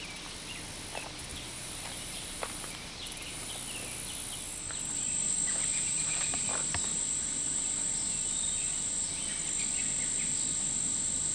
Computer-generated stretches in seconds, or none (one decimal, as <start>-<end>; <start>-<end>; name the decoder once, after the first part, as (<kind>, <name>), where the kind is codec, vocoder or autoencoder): 1.3-3.5 (vocoder, BigVGAN v2); 5.7-6.4